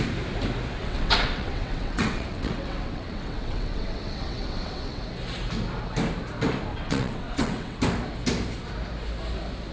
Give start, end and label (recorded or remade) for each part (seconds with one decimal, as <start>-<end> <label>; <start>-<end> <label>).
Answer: 0.0-0.8 recorded; 0.8-5.0 remade; 5.0-6.7 recorded; 6.7-7.8 remade; 7.8-9.7 recorded